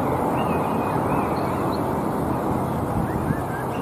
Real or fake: real